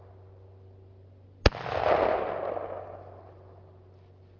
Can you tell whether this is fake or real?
real